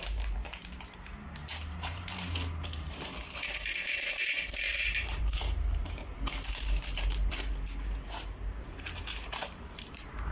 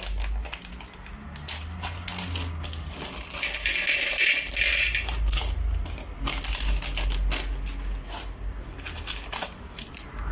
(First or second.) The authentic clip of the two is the second